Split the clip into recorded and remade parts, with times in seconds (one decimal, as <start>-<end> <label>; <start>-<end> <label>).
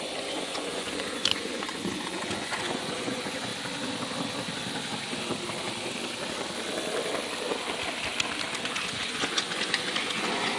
0.0-3.5 remade; 3.5-8.6 recorded; 8.6-10.6 remade